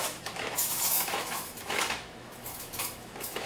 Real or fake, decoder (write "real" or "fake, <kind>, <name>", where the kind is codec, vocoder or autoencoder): fake, autoencoder, DAC-VAE